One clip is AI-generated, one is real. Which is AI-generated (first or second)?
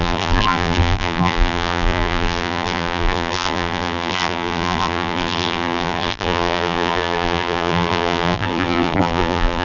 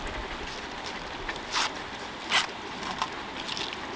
first